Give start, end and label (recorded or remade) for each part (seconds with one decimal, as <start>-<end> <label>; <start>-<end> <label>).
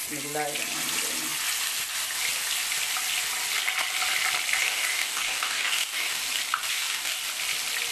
0.0-4.6 recorded; 4.6-6.2 remade; 6.2-6.7 recorded; 6.7-7.2 remade; 7.2-7.9 recorded